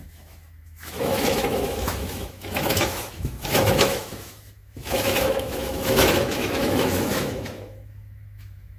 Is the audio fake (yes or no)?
yes